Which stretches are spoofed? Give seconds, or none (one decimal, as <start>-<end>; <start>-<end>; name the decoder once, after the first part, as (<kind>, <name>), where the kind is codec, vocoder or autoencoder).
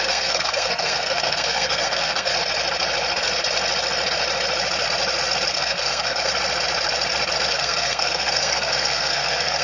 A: 0.0-2.3 (codec, SNAC); 5.5-6.3; 7.5-9.6